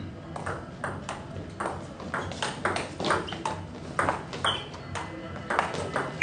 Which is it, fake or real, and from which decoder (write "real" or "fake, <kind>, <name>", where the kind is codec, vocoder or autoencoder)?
real